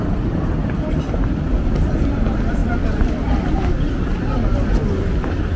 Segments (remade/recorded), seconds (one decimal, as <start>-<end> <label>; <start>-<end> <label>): 0.0-5.6 recorded